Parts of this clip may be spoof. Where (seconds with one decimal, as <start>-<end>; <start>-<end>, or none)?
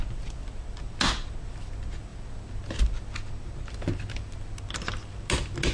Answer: none